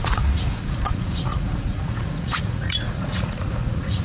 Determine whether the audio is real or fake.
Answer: fake